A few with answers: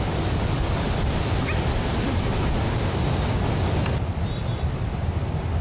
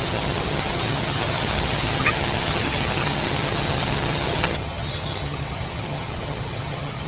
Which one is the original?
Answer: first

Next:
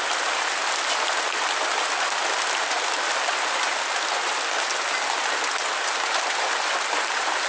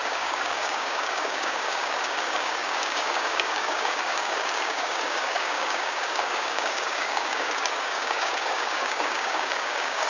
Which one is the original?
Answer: first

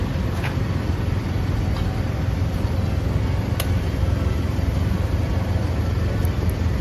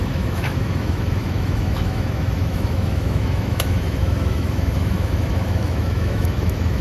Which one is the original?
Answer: first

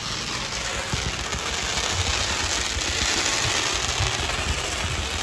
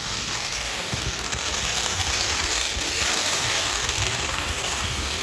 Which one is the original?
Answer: first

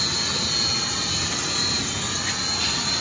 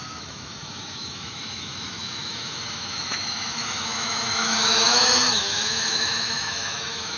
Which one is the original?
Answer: first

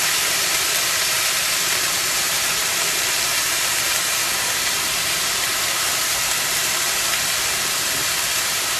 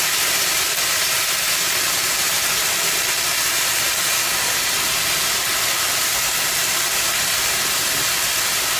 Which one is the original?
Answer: second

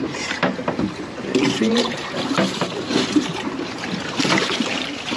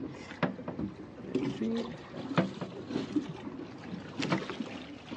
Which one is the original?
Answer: second